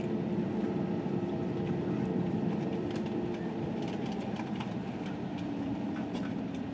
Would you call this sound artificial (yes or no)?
yes